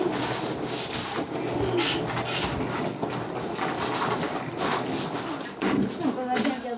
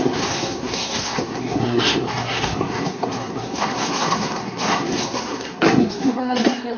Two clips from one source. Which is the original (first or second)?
first